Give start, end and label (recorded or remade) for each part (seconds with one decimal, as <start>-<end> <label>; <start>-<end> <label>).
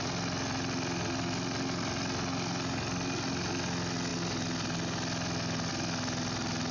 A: 0.0-6.7 recorded